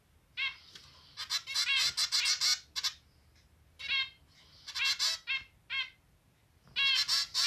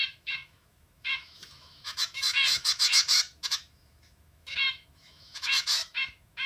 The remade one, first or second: second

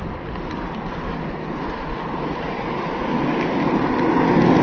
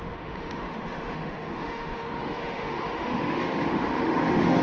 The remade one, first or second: second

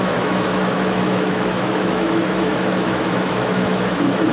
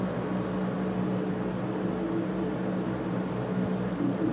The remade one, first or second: first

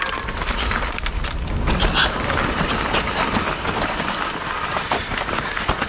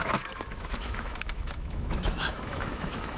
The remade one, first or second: second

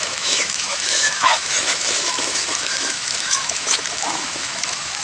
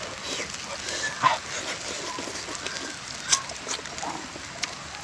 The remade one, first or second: first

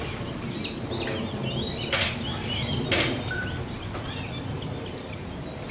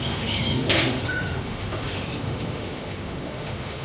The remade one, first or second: second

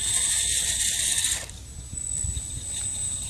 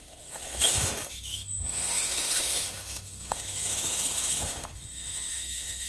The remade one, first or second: second